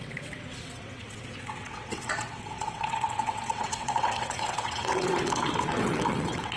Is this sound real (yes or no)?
no